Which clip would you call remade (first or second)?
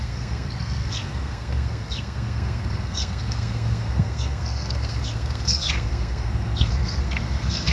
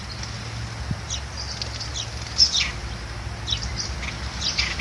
first